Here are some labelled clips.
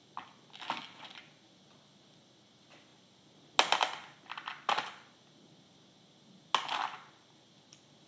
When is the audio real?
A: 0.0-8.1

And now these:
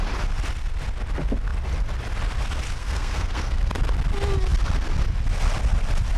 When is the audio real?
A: 0.0-2.8; 3.6-6.2

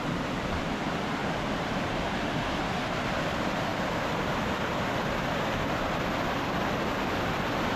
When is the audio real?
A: 3.7-7.8

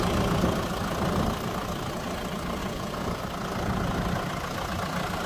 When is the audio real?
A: 0.0-2.6; 3.2-5.3

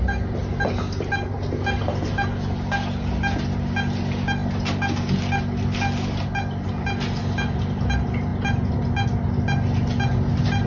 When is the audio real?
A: 0.0-10.7

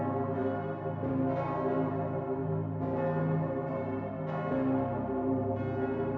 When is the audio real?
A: 0.0-6.2

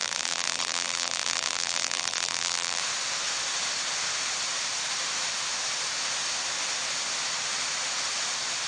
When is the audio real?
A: 2.8-8.7

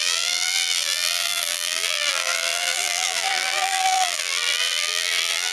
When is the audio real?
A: none